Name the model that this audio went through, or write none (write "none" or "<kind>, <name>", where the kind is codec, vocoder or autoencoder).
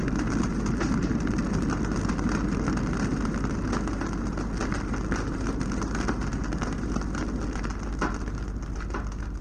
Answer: none